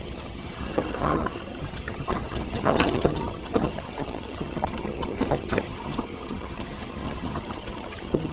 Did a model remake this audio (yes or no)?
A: yes